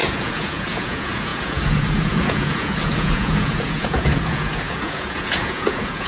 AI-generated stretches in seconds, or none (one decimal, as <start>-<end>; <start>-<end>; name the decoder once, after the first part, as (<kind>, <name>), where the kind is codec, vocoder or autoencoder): 0.0-6.1 (vocoder, Vocos)